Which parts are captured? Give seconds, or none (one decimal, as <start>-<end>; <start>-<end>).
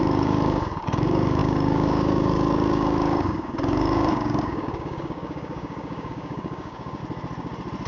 7.0-7.9